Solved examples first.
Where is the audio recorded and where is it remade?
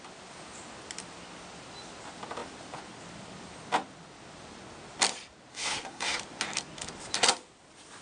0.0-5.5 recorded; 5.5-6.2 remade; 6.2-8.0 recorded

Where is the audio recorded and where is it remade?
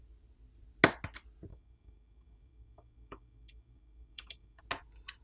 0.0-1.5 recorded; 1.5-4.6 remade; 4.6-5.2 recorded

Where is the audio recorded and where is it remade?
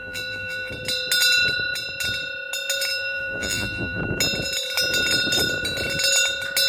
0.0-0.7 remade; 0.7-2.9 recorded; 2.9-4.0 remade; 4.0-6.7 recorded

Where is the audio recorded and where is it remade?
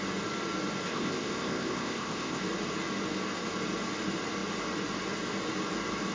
0.0-0.9 recorded; 0.9-2.4 remade; 2.4-6.1 recorded